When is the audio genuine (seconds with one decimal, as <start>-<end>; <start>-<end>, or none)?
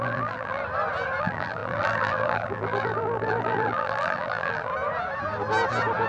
0.6-1.2; 4.7-6.1